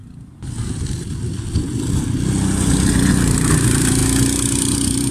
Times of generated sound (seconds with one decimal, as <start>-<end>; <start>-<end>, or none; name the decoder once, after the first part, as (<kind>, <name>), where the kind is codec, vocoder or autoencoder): 3.1-4.0 (vocoder, BigVGAN v2)